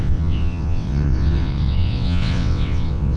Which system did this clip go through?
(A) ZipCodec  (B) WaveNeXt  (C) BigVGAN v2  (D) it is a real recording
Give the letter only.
B